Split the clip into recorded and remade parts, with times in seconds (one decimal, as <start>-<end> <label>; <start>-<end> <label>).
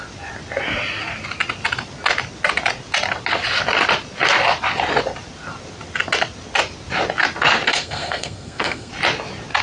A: 0.0-7.7 recorded; 7.7-8.9 remade; 8.9-9.6 recorded